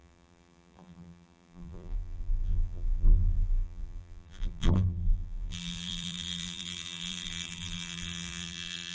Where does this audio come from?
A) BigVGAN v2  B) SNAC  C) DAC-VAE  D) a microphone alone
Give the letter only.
A